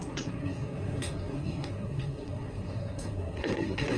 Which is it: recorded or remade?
remade